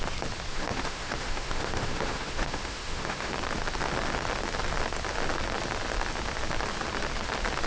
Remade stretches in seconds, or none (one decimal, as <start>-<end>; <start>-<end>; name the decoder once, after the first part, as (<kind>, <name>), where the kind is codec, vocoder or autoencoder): 0.5-3.3 (autoencoder, DAC-VAE)